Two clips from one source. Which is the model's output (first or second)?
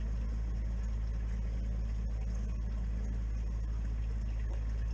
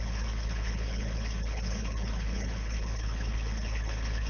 second